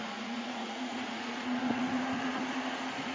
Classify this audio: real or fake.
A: fake